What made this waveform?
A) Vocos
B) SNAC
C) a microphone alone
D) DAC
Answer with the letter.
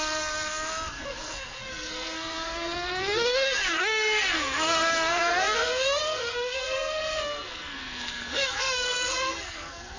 B